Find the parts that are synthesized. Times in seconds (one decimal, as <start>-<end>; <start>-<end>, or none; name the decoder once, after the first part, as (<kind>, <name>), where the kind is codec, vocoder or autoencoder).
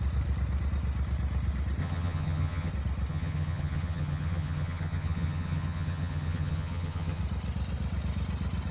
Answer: 1.8-2.7 (vocoder, HiFi-GAN); 3.1-7.2